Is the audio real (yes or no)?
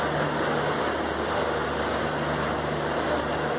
yes